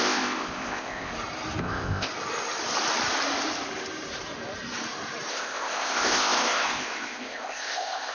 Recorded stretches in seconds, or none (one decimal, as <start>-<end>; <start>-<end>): 1.1-1.6; 2.1-5.3